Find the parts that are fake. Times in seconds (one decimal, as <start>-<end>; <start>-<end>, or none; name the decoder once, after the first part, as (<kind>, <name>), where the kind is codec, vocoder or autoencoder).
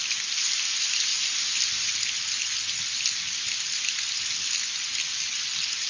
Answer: none